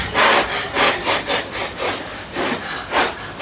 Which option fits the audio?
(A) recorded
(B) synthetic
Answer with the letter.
A